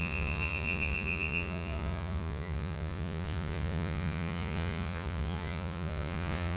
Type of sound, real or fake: fake